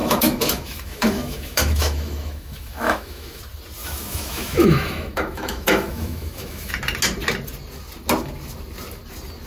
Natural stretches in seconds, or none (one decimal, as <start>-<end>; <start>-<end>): 3.4-3.8; 6.7-9.5